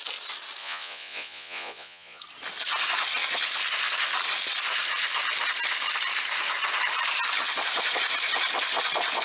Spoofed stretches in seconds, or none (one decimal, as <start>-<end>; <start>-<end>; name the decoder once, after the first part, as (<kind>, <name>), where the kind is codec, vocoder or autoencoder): 0.6-2.2 (vocoder, Vocos)